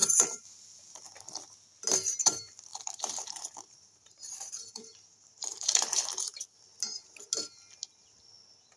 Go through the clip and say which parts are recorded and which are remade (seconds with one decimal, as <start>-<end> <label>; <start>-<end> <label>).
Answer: 0.0-1.0 remade; 1.0-2.7 recorded; 2.7-6.4 remade; 6.4-8.8 recorded